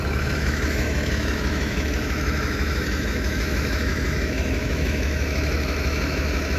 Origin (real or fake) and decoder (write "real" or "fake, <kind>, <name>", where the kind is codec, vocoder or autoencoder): fake, autoencoder, DAC-VAE